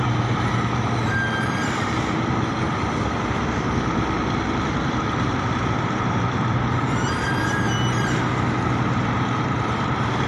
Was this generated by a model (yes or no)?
yes